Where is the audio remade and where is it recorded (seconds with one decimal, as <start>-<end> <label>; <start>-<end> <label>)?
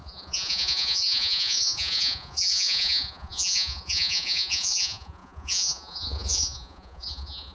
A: 0.0-7.5 remade